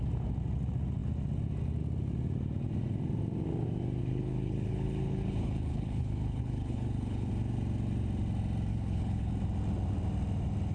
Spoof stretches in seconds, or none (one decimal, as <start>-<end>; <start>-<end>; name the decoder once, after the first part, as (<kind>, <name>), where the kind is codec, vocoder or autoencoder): 4.0-7.3 (codec, HILCodec); 8.7-9.3